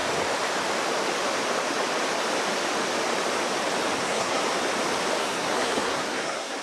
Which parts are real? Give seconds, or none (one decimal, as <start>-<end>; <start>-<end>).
0.0-4.0; 4.4-5.2